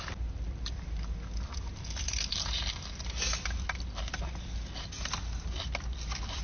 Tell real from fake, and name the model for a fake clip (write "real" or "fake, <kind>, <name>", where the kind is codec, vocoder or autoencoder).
real